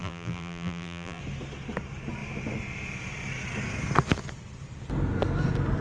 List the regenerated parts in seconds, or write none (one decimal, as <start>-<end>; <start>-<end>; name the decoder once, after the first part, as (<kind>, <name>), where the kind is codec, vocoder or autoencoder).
0.0-1.2 (vocoder, BigVGAN v2)